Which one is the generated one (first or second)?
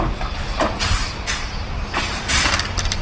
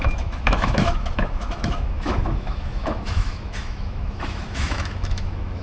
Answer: second